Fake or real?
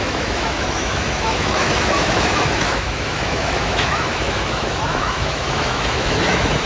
fake